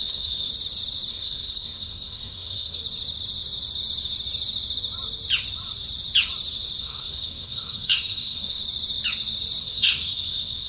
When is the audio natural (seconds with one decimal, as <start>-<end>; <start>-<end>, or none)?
0.5-1.1; 2.8-6.8; 8.6-9.6